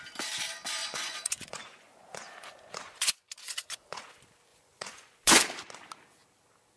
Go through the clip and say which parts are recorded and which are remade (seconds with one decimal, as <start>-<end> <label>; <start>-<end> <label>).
0.0-0.8 recorded; 0.8-4.1 remade; 4.1-4.5 recorded; 4.5-5.4 remade; 5.4-6.8 recorded